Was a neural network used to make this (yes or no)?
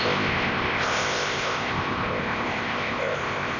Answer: yes